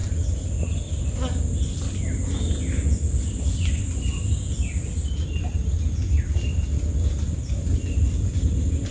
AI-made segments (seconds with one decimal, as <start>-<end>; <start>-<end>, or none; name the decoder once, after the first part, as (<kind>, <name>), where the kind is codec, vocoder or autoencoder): none